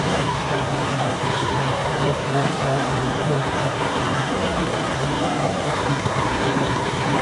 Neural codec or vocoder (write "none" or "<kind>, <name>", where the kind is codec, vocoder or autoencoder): codec, SNAC